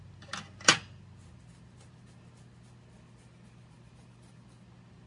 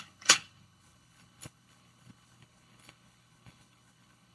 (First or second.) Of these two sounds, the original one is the first